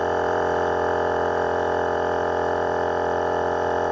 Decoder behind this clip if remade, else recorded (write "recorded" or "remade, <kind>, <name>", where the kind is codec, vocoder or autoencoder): remade, vocoder, BigVGAN v2